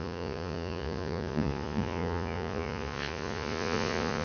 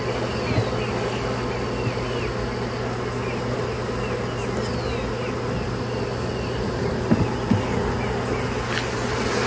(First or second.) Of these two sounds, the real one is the second